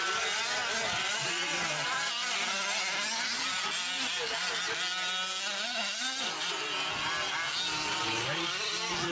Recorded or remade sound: recorded